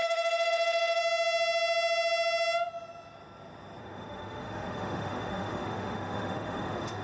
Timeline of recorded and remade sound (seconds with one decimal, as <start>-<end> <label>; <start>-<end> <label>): 0.0-1.0 remade; 1.0-3.8 recorded; 3.8-7.0 remade